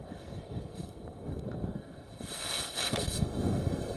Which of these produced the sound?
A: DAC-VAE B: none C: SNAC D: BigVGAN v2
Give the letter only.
C